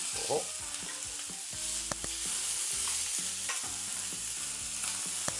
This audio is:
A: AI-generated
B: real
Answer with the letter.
B